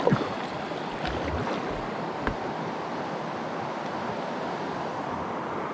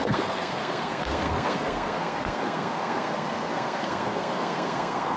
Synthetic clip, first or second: second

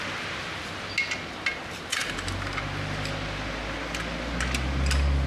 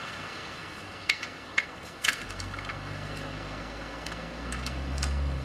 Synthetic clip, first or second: second